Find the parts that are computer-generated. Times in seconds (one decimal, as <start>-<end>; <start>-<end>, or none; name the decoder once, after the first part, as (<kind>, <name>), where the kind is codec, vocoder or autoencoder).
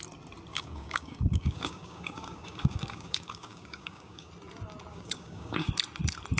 0.5-4.3 (codec, DAC); 4.9-5.7